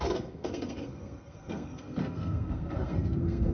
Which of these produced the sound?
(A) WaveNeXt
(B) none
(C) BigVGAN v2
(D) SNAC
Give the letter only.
D